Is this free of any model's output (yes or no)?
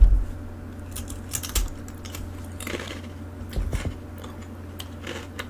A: yes